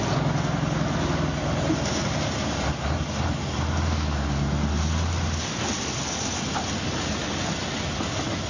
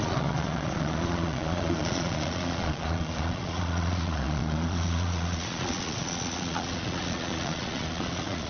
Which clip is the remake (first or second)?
second